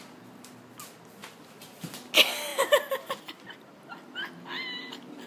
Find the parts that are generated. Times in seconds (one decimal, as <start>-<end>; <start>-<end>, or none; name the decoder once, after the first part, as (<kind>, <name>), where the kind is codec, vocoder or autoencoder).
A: 1.2-1.9 (vocoder, BigVGAN v2); 4.6-5.3